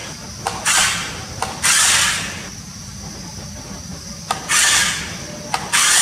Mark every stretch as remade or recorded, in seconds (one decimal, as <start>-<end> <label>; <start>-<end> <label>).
0.0-6.0 recorded